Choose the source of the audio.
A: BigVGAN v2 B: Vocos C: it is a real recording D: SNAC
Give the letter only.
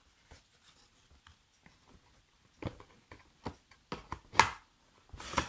C